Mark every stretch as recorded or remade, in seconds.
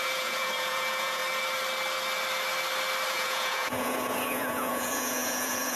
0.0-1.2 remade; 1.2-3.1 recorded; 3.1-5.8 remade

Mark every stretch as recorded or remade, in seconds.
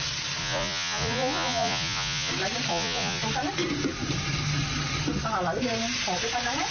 0.0-0.4 recorded; 0.4-2.3 remade; 2.3-2.7 recorded; 2.7-3.2 remade; 3.2-6.7 recorded